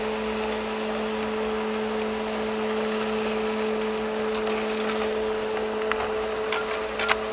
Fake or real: real